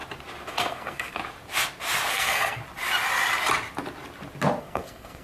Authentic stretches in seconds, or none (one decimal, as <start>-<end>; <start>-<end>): 0.0-0.5; 1.2-2.1; 2.6-4.6